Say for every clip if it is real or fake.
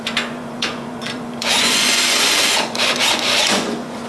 fake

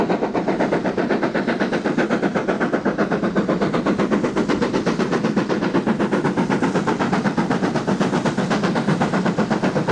real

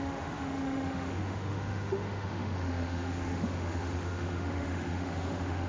fake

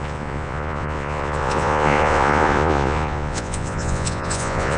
fake